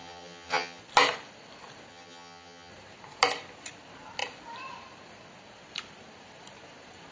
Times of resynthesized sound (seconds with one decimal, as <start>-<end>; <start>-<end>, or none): 0.0-0.8; 1.9-2.7